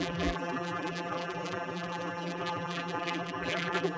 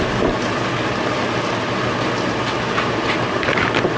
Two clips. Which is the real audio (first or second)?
second